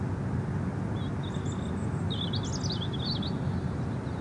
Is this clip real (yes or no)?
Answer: yes